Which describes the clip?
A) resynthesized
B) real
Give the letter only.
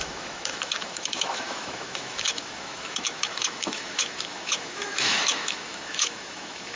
A